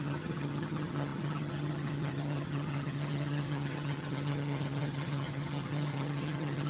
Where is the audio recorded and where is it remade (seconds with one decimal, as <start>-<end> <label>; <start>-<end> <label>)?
0.0-6.7 remade